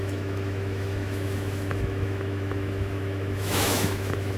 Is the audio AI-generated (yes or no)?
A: yes